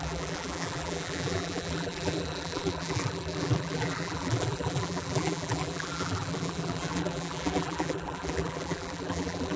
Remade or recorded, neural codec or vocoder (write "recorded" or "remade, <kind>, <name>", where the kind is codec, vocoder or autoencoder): remade, vocoder, BigVGAN v2